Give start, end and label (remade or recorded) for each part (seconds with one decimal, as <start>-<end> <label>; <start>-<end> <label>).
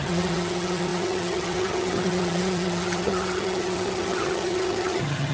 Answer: 0.0-5.3 remade